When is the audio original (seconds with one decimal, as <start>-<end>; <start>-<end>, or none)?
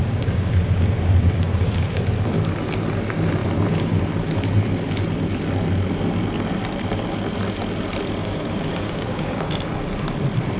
2.0-8.2; 9.5-10.6